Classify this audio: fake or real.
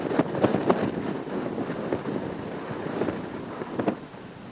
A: real